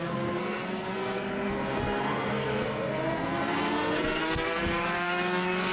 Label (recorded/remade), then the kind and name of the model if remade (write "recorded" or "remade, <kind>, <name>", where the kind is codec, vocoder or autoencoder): remade, codec, SNAC